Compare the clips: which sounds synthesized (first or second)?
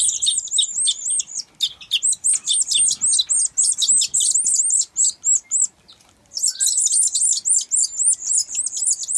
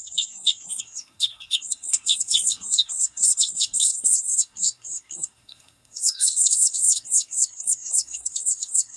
second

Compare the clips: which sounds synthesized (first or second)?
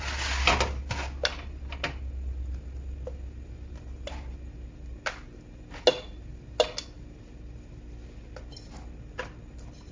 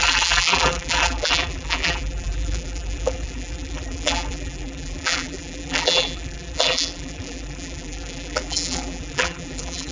second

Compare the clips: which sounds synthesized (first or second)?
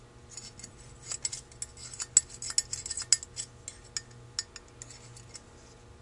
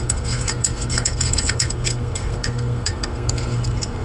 second